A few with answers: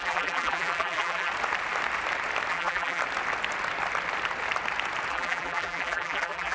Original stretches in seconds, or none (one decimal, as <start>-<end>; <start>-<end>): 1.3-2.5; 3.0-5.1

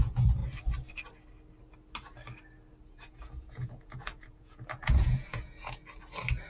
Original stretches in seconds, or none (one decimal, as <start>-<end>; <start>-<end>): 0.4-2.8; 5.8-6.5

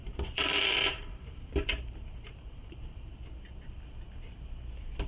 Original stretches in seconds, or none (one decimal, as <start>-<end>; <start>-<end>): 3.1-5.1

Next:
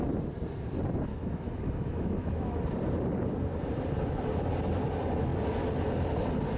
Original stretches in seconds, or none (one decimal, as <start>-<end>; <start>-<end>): 0.0-1.1; 2.6-6.6